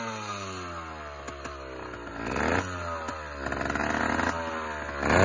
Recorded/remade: recorded